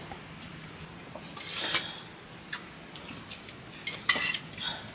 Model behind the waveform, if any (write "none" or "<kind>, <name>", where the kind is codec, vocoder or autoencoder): none